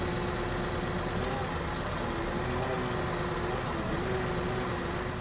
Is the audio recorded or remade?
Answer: recorded